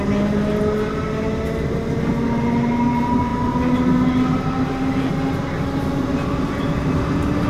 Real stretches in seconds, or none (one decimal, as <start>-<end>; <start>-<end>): 0.0-7.5